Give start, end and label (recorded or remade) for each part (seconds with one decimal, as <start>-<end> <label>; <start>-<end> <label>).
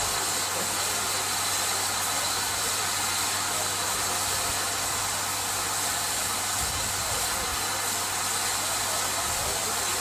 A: 0.0-10.0 recorded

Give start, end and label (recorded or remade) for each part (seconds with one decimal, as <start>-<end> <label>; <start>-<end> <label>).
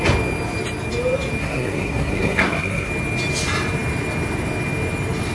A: 0.0-1.4 recorded; 1.4-2.9 remade; 2.9-5.3 recorded